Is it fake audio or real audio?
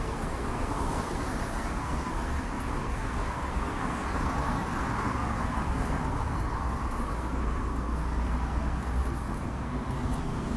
fake